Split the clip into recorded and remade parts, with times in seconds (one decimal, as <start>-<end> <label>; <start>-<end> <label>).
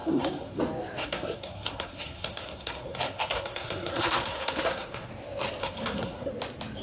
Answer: 0.0-0.6 remade; 0.6-1.0 recorded; 1.0-5.1 remade; 5.1-5.6 recorded; 5.6-6.3 remade; 6.3-6.8 recorded